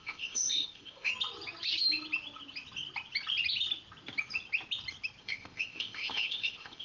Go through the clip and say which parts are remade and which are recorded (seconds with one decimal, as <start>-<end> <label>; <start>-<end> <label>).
0.0-1.1 remade; 1.1-5.2 recorded; 5.2-6.8 remade